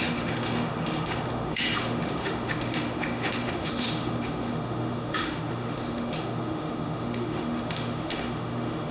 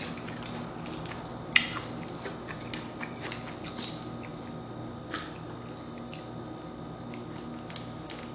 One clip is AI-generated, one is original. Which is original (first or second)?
second